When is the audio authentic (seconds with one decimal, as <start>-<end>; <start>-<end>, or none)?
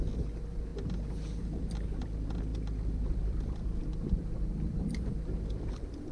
0.0-2.5